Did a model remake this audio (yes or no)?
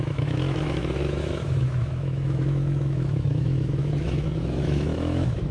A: yes